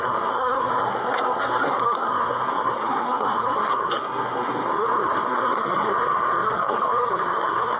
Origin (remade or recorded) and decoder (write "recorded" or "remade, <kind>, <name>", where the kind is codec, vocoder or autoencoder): remade, codec, SNAC